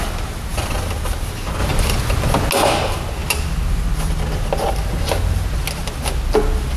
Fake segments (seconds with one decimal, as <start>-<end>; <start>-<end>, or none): none

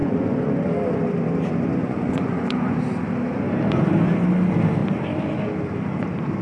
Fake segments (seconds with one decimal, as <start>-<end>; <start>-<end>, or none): 0.0-0.5; 1.8-2.8

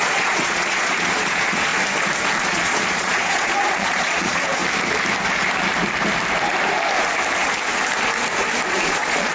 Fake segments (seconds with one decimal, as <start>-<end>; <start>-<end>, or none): 0.0-1.7; 2.5-4.6; 8.7-9.3

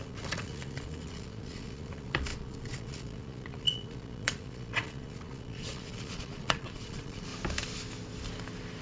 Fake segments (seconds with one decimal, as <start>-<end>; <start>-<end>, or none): 0.0-7.3

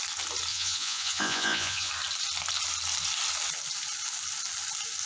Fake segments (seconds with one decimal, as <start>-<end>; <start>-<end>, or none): 0.5-1.9

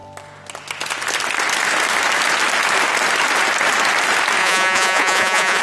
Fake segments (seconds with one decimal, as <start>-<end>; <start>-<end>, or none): 4.4-5.6